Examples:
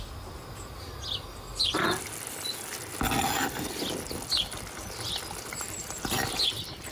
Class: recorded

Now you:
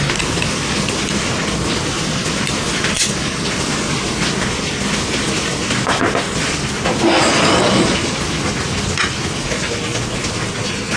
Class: recorded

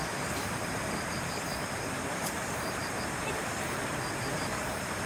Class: remade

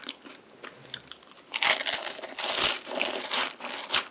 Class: recorded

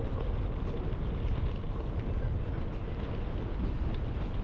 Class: recorded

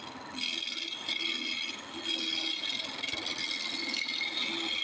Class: recorded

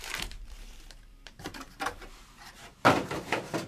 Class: remade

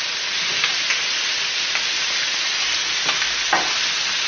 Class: recorded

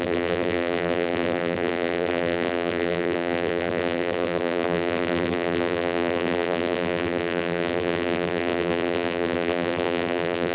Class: remade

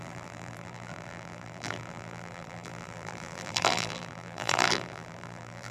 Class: remade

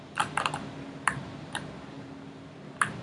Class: remade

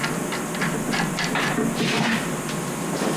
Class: recorded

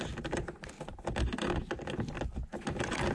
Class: recorded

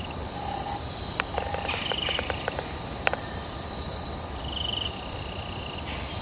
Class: remade